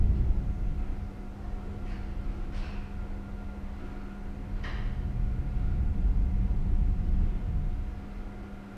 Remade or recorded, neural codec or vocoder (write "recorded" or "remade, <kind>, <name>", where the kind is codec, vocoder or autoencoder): recorded